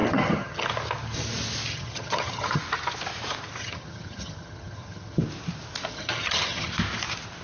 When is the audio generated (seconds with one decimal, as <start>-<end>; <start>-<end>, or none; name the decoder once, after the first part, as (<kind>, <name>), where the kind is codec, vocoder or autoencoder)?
0.0-0.7 (vocoder, HiFi-GAN); 1.7-2.6; 3.6-5.2; 5.9-6.7